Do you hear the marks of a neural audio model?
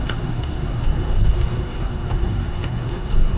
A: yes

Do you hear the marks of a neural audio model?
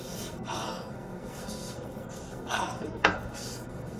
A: yes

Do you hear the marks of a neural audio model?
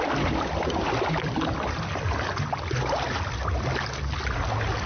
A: no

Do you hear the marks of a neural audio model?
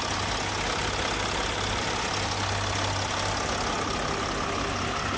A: no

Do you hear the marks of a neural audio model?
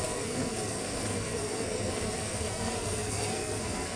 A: yes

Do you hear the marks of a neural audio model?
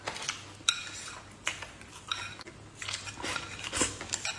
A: no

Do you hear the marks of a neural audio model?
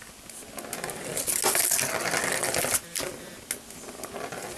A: no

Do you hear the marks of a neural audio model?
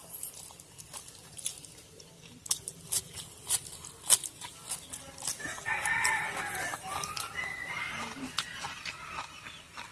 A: no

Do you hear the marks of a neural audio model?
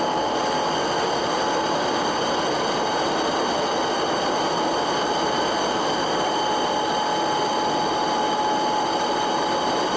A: no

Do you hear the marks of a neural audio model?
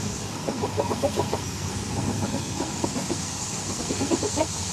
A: yes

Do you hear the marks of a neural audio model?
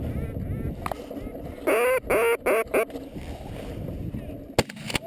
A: no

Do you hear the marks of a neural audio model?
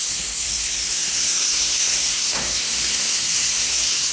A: yes